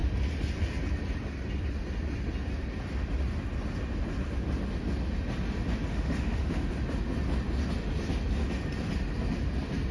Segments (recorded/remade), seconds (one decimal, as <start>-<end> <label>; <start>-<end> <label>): 0.0-5.9 recorded; 5.9-6.7 remade; 6.7-9.9 recorded